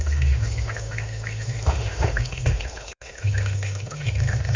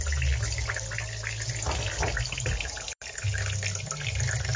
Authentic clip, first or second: second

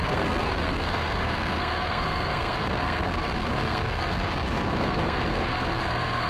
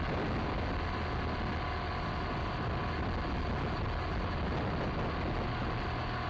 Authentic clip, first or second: second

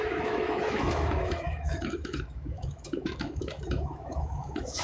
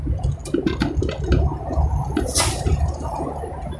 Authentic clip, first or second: second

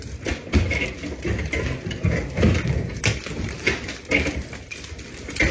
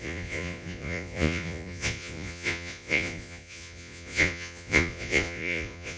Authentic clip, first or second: first